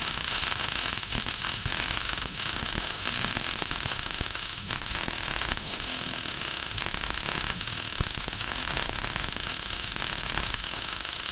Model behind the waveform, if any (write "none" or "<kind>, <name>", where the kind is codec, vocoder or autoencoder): autoencoder, DAC-VAE